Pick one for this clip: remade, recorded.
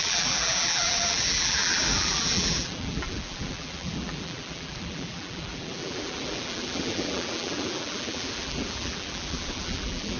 remade